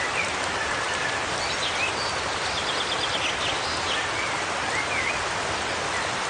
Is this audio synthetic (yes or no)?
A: no